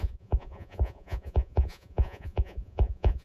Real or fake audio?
fake